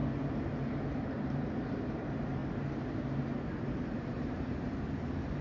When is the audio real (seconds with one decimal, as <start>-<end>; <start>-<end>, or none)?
0.0-0.6; 2.4-4.1